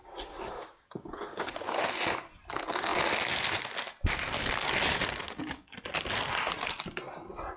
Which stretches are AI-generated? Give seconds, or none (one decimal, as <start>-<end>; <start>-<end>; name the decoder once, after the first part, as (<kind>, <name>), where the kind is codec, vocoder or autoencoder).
0.0-1.6 (codec, DAC)